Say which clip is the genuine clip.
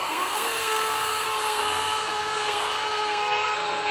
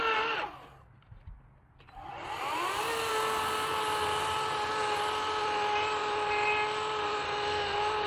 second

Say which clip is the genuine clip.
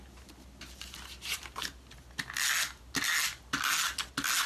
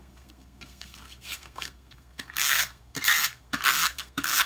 first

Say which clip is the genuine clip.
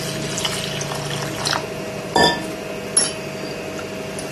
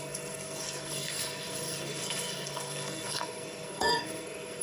first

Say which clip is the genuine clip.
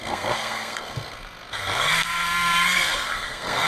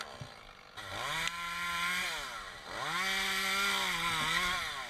second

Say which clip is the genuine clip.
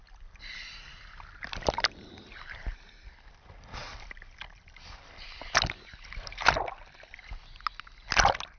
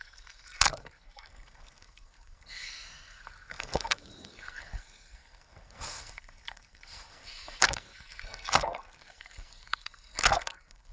first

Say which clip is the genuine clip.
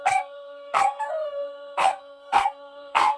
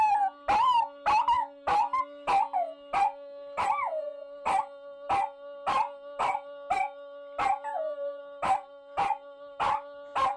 second